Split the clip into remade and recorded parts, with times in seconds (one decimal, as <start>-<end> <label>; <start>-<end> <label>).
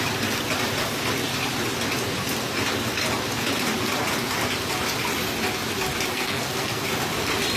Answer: 0.0-6.1 recorded; 6.1-6.8 remade; 6.8-7.6 recorded